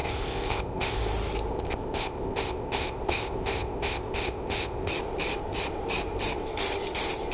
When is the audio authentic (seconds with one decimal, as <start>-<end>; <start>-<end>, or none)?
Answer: 1.0-1.5; 4.9-7.3